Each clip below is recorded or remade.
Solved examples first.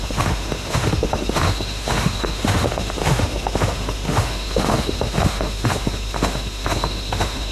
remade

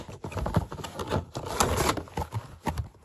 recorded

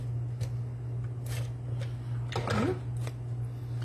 recorded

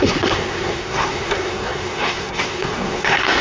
remade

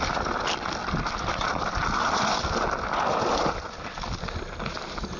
recorded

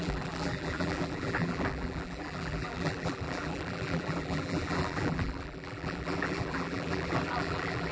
remade